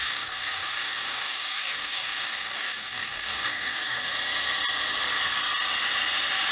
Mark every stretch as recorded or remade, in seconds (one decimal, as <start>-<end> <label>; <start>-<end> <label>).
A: 0.0-4.1 remade; 4.1-6.5 recorded